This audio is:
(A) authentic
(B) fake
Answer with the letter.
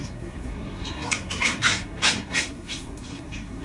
B